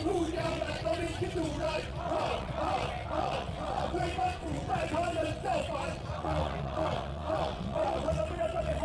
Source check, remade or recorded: remade